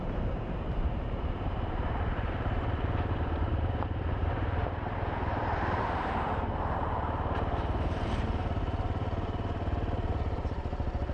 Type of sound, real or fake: fake